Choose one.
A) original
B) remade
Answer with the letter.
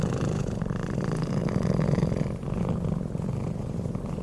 B